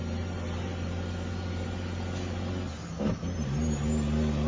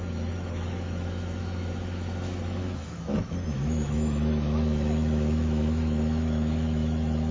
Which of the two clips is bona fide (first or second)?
first